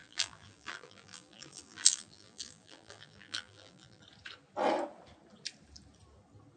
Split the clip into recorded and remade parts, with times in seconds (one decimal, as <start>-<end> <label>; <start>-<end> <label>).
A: 0.0-4.0 remade; 4.0-6.6 recorded